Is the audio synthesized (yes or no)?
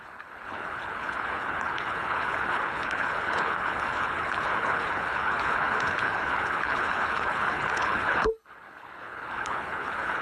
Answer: yes